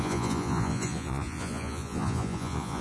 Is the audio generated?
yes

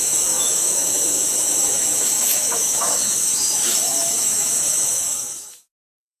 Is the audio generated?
yes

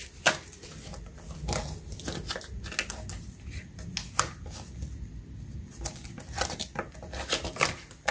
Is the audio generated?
no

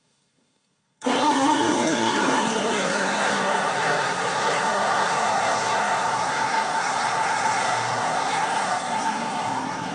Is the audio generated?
yes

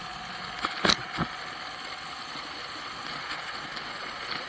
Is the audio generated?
no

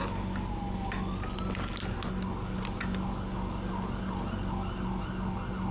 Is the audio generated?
no